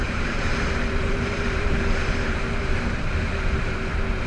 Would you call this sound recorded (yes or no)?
no